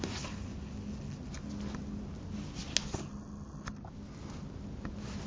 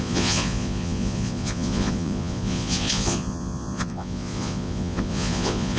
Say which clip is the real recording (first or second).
first